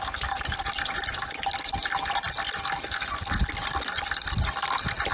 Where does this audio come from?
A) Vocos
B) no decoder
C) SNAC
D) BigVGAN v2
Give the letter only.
B